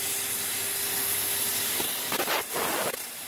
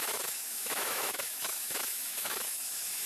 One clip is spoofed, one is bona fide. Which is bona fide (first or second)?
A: first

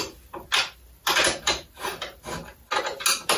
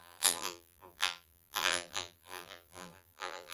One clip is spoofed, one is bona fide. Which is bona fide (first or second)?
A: first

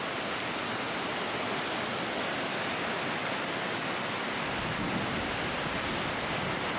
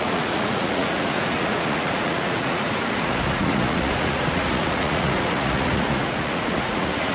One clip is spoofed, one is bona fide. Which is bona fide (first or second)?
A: first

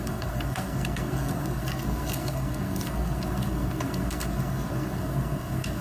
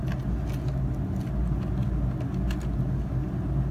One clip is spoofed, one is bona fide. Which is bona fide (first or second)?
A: second